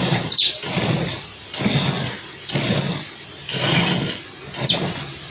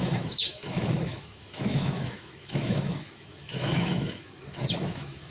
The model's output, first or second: second